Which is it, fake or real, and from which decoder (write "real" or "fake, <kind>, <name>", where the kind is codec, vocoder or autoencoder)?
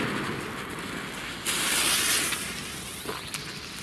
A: real